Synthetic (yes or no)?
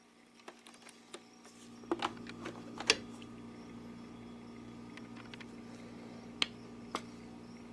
no